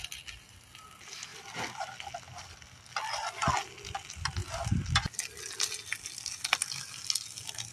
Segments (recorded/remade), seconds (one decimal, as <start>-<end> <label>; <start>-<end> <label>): 0.0-7.7 recorded